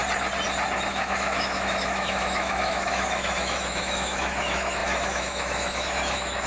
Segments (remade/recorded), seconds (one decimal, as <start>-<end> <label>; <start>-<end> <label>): 0.0-0.9 recorded; 0.9-6.5 remade